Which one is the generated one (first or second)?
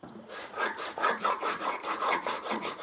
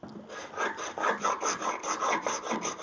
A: first